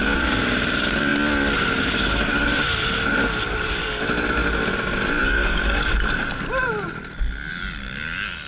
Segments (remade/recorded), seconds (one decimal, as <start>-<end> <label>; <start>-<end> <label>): 0.0-8.5 recorded